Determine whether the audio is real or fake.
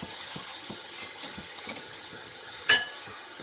fake